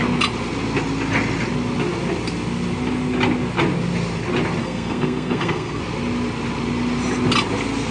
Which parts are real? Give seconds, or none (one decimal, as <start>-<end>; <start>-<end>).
0.0-4.6; 5.8-7.9